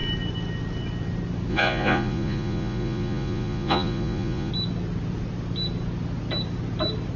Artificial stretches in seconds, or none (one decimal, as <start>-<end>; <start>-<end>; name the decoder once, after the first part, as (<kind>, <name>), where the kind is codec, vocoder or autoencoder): 1.5-4.5 (vocoder, Vocos)